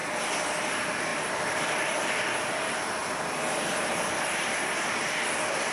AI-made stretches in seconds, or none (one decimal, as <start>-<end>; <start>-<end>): 0.6-3.0; 3.8-5.7

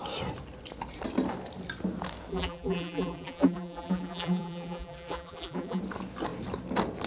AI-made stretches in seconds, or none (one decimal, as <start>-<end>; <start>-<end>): 2.3-5.8

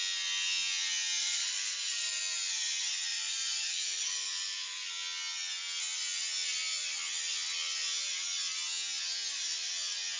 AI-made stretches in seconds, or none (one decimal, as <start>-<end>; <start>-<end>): 1.2-2.2; 3.1-4.9